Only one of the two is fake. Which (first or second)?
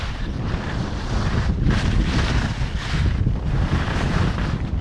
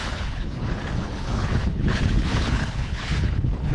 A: second